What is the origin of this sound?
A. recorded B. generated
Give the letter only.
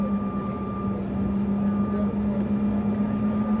A